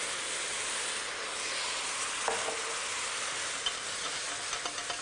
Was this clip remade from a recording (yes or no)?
no